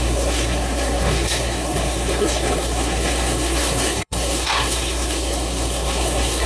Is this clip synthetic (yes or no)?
yes